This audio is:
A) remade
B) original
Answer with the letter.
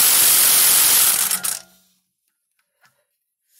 B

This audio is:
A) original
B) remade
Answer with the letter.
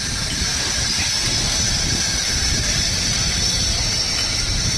B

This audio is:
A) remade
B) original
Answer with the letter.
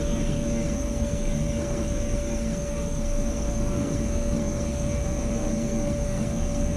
A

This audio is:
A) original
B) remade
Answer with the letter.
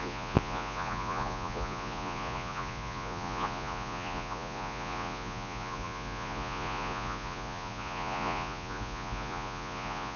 B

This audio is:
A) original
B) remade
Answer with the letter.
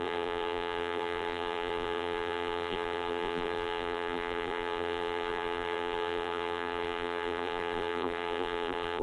B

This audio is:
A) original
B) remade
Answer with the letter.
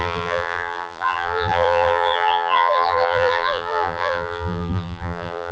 B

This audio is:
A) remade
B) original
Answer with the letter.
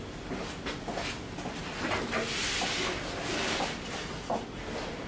B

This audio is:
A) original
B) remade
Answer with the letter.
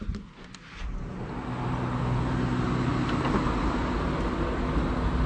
A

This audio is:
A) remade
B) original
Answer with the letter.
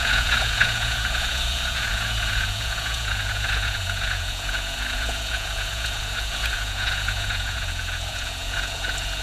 A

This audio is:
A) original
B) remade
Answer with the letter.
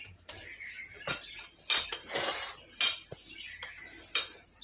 B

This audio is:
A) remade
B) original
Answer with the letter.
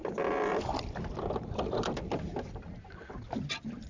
B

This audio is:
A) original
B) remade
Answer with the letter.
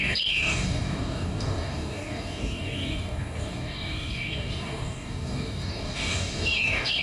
B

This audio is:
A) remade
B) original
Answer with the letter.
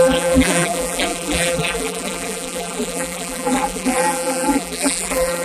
A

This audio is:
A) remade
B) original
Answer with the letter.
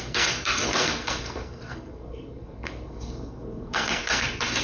A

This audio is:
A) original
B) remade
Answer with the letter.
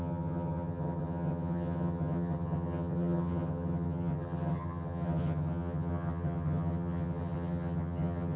B